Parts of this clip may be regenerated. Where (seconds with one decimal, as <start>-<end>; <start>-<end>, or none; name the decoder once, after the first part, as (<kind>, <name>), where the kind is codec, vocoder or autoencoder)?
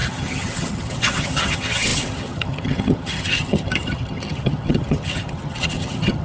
0.0-6.2 (vocoder, HiFi-GAN)